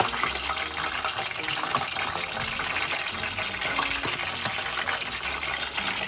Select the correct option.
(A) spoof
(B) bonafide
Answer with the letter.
B